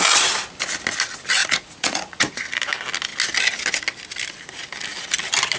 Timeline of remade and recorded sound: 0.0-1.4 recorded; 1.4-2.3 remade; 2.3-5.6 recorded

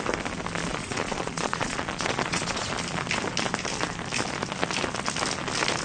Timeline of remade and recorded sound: 0.0-0.7 recorded; 0.7-2.7 remade; 2.7-5.8 recorded

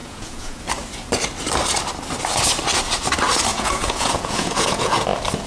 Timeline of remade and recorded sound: 0.0-0.6 remade; 0.6-3.5 recorded; 3.5-5.0 remade; 5.0-5.5 recorded